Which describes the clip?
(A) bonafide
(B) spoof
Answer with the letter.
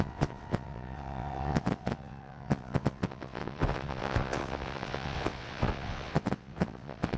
B